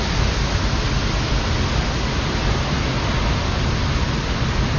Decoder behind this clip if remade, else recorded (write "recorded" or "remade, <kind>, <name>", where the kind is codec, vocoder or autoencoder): recorded